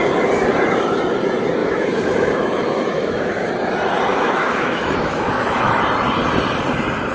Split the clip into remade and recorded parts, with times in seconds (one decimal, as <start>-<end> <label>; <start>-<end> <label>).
0.0-1.6 recorded; 1.6-3.5 remade; 3.5-4.1 recorded; 4.1-5.8 remade; 5.8-7.1 recorded

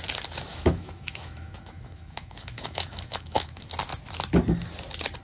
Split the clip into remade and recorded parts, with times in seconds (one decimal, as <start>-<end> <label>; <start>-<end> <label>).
0.0-0.5 recorded; 0.5-3.6 remade; 3.6-5.2 recorded